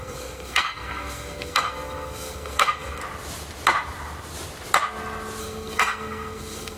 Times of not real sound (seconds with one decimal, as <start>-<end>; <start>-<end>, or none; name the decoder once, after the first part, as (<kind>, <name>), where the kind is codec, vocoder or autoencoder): 0.0-3.0 (codec, SNAC); 5.4-6.8